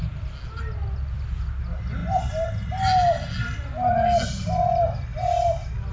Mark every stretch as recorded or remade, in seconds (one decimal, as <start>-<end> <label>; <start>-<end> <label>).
0.0-5.9 recorded